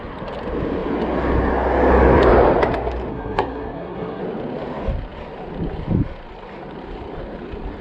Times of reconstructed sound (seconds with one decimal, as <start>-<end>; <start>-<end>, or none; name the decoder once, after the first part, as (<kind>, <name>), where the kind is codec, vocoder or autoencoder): 3.1-4.2 (codec, SNAC)